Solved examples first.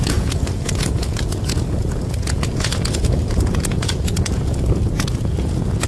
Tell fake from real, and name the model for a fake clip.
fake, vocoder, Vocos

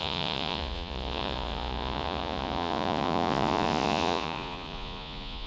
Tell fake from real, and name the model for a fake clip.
fake, vocoder, Vocos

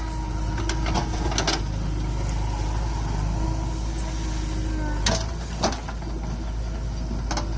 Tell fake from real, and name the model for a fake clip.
real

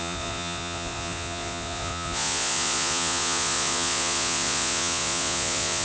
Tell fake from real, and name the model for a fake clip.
fake, vocoder, Vocos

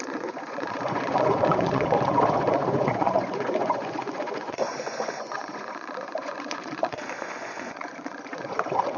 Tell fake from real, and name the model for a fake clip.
fake, vocoder, Vocos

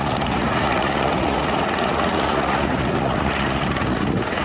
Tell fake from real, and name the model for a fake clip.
fake, vocoder, Vocos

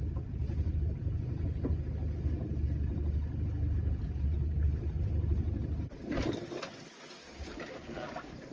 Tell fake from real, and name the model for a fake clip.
real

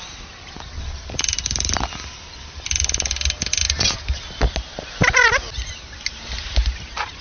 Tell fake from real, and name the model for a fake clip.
real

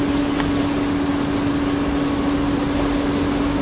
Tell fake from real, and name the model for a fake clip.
real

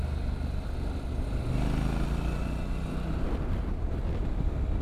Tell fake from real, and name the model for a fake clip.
real